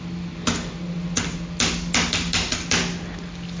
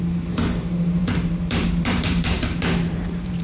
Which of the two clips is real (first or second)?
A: first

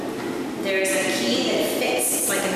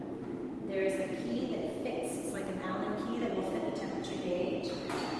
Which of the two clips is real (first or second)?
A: first